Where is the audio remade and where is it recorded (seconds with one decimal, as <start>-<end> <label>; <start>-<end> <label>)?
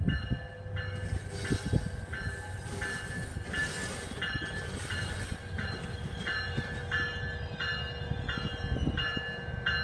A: 0.0-9.8 recorded